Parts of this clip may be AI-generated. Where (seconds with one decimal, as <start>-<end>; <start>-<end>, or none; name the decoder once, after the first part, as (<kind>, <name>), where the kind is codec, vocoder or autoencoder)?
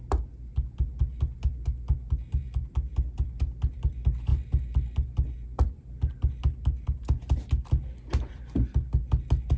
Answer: none